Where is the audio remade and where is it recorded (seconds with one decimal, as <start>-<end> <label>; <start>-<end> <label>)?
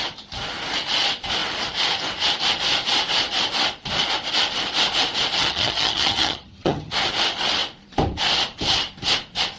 0.0-5.4 recorded; 5.4-6.9 remade; 6.9-9.6 recorded